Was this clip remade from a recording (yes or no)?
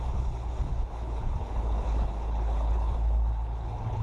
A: yes